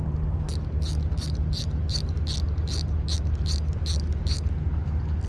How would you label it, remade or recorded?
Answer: recorded